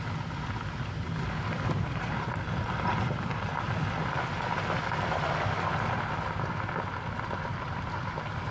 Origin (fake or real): real